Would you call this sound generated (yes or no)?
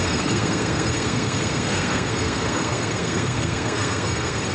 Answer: yes